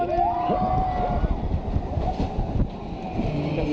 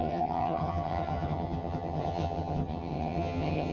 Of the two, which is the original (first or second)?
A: first